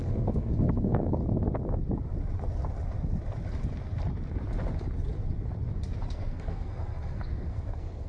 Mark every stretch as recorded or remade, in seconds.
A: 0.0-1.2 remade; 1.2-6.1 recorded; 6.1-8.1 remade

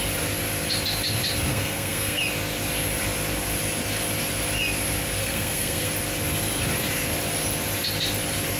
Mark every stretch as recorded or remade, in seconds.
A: 0.0-1.5 recorded; 1.5-2.2 remade; 2.2-5.2 recorded; 5.2-5.9 remade; 5.9-8.6 recorded